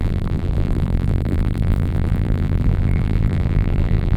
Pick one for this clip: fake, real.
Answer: fake